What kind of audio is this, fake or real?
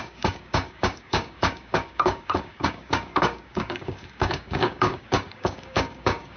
fake